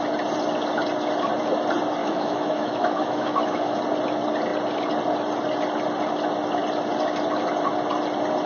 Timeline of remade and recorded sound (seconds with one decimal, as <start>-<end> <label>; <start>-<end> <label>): 0.0-2.0 recorded; 2.0-3.8 remade; 3.8-8.5 recorded